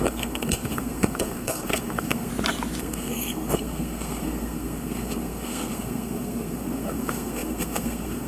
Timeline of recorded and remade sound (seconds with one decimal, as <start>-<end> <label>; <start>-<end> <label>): 0.0-2.3 remade; 2.3-2.8 recorded; 2.8-8.3 remade